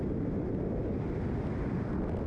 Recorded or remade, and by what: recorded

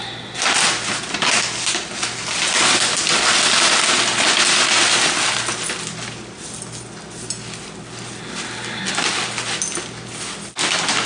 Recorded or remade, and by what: recorded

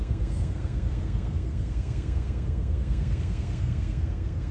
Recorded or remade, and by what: remade, codec, SNAC